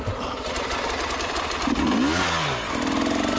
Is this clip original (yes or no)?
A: yes